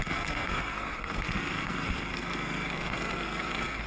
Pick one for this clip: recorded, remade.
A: remade